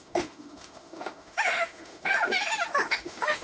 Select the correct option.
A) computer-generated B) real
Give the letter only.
A